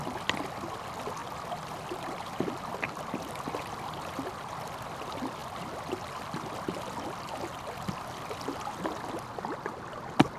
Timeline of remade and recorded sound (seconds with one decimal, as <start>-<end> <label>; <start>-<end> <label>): 0.0-10.4 recorded